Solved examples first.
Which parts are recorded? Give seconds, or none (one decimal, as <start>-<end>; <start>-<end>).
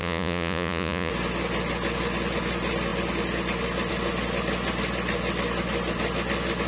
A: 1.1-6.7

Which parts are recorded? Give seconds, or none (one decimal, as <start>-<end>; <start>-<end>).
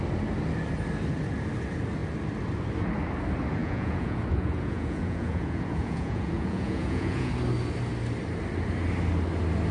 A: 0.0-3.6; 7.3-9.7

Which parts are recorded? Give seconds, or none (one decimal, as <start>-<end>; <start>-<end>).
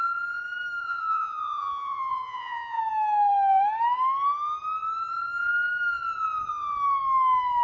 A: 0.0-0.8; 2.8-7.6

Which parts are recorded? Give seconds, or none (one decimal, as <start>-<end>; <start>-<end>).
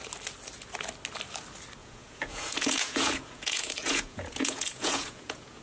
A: 0.0-1.8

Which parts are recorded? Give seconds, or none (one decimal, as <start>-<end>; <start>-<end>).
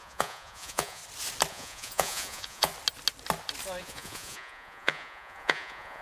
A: 1.0-1.5; 2.7-3.8